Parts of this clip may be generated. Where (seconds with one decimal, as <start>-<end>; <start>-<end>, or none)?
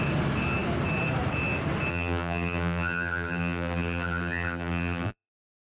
1.9-5.3